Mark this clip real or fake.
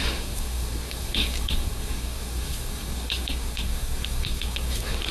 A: fake